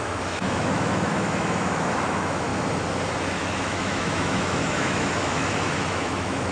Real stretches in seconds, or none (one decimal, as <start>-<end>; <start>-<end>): 2.5-3.3